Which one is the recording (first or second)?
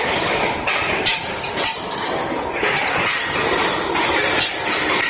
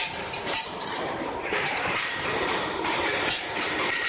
first